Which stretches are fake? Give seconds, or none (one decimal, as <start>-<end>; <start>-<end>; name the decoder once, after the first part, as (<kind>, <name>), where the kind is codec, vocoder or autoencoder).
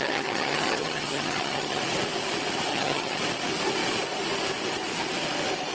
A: 0.0-1.8 (vocoder, HiFi-GAN); 2.7-3.2